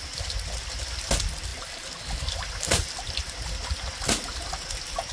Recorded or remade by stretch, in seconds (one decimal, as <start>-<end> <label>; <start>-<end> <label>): 0.0-5.1 recorded